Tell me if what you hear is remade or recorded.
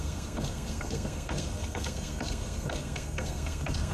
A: remade